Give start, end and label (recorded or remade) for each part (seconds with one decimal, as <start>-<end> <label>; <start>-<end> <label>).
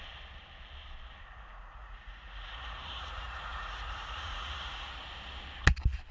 0.0-1.2 recorded; 1.2-4.9 remade; 4.9-6.1 recorded